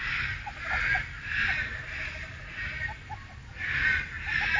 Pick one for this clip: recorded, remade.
recorded